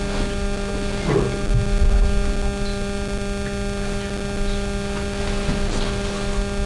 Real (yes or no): yes